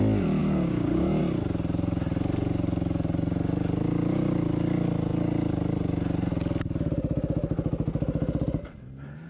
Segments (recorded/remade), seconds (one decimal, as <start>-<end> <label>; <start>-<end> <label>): 0.0-0.4 recorded; 0.4-1.2 remade; 1.2-9.3 recorded